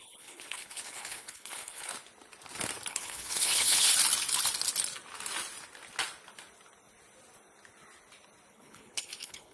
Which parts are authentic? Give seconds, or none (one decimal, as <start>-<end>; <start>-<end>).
1.9-2.9; 3.9-8.5